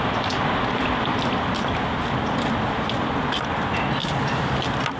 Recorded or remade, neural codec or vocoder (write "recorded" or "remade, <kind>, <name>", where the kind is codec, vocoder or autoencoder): recorded